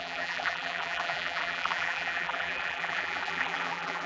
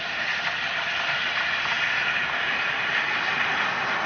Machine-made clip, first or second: first